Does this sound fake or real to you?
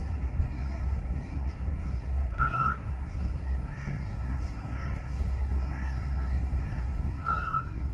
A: fake